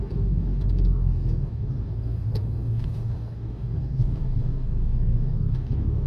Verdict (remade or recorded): remade